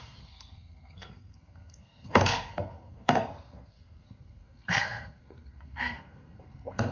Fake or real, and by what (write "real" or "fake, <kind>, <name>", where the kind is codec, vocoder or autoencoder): fake, codec, SNAC